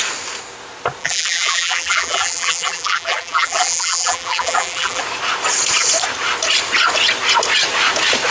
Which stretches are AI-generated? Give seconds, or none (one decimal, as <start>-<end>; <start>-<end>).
1.0-5.0